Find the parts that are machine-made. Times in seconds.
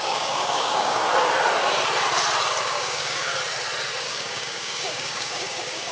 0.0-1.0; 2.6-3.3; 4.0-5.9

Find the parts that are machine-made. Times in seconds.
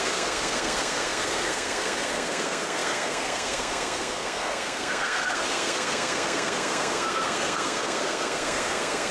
0.0-9.1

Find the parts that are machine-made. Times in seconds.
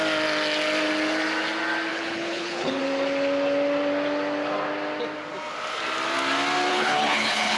1.9-2.8; 6.7-7.6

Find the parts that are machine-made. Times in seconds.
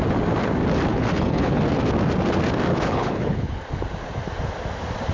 0.9-1.6; 2.7-3.6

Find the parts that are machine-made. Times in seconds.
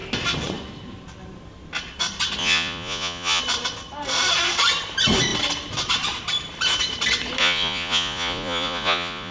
2.4-3.4; 7.4-9.3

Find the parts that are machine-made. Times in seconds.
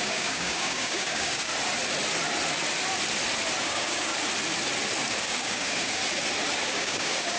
0.0-1.5; 3.6-4.1; 5.2-6.0; 6.7-7.4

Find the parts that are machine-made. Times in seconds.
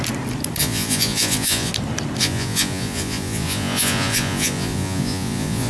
0.6-1.7; 2.2-5.7